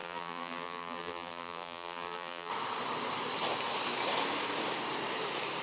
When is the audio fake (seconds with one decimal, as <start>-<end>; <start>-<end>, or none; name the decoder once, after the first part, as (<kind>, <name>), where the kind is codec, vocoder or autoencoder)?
0.0-2.5 (vocoder, BigVGAN v2)